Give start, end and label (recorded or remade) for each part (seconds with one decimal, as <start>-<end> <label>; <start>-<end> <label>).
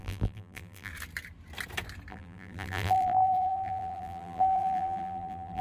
0.0-0.9 remade; 0.9-2.1 recorded; 2.1-5.6 remade